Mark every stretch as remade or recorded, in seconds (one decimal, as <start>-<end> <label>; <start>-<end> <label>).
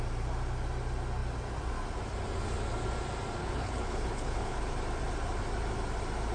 0.0-3.4 recorded; 3.4-4.7 remade; 4.7-6.3 recorded